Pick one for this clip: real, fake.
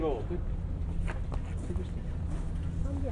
real